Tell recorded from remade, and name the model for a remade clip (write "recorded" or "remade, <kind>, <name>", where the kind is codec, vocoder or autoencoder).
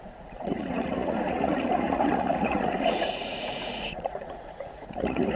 remade, vocoder, Vocos